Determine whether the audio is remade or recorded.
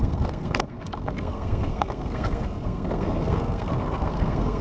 remade